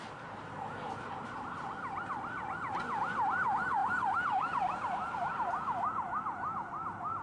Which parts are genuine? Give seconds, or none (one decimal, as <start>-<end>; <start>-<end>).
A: 0.0-7.2